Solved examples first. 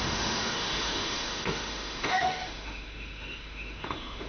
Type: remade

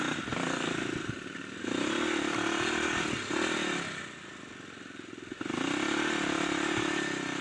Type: recorded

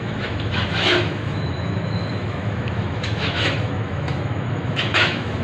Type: remade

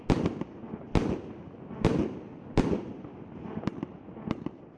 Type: recorded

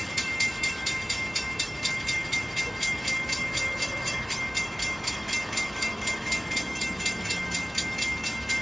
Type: remade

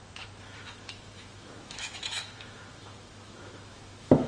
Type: remade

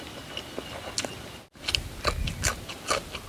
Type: recorded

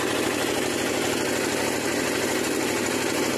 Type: recorded